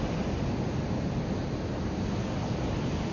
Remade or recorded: recorded